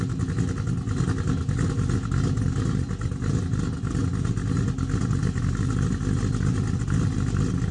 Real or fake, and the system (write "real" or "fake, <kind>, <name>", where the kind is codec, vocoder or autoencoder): real